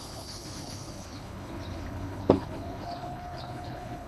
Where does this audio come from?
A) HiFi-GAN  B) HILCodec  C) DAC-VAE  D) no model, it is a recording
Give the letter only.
B